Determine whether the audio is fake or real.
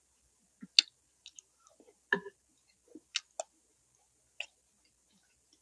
real